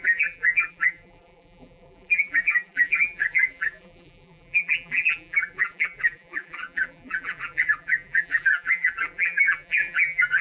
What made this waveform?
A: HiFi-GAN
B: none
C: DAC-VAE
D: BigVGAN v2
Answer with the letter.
D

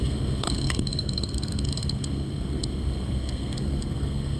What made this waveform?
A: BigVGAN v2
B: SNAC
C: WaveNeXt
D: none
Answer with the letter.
B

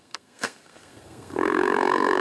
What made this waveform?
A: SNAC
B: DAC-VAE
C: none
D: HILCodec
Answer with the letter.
A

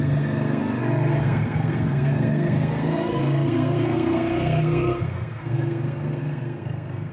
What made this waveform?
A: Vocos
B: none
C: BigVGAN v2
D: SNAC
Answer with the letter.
D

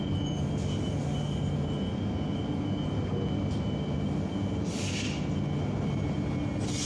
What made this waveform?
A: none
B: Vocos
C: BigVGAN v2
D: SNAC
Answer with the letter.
A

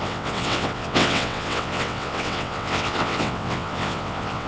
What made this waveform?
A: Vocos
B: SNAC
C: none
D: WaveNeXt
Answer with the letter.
D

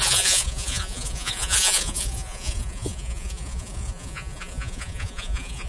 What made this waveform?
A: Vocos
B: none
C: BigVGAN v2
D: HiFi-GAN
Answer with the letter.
A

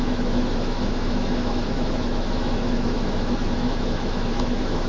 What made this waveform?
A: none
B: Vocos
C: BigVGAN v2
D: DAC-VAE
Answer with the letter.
D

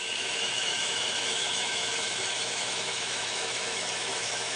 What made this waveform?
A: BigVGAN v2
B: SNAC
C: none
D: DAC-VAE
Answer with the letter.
D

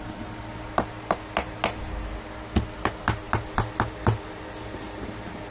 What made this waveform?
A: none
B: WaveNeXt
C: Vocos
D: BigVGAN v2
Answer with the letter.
A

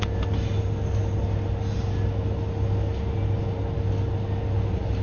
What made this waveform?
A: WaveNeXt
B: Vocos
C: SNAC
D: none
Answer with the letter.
D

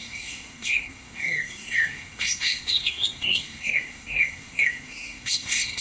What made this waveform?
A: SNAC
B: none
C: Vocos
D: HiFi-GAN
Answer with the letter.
A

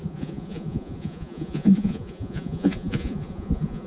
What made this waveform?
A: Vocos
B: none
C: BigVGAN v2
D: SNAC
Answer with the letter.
A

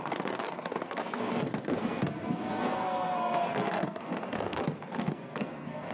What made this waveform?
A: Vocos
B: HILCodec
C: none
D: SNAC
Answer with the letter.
D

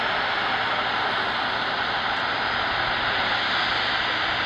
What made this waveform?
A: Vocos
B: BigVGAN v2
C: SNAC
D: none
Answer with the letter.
D